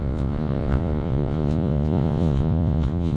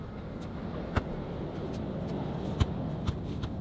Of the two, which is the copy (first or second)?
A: first